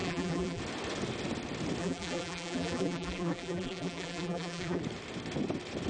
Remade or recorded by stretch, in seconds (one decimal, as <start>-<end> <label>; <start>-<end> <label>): 0.0-0.6 remade; 0.6-1.8 recorded; 1.8-4.8 remade; 4.8-5.9 recorded